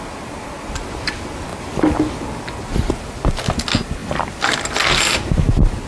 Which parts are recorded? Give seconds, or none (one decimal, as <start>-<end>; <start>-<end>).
0.0-5.9

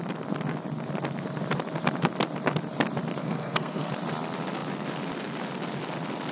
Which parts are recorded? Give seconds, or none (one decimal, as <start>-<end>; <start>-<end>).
0.0-3.2; 3.9-6.3

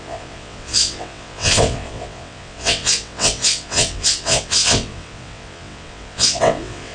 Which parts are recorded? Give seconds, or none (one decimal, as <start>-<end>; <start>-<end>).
none

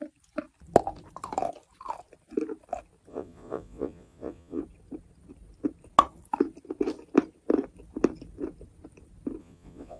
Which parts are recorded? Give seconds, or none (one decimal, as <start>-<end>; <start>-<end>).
0.0-3.1; 4.6-9.4

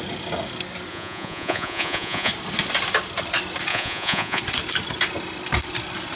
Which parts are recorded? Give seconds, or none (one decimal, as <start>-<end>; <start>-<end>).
0.0-0.9; 2.3-3.7; 4.4-6.2